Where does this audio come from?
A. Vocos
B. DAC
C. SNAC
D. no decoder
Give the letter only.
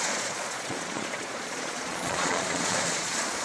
A